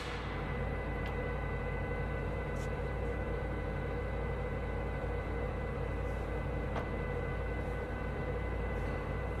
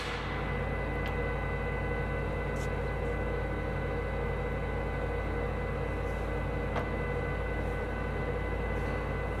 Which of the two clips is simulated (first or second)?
first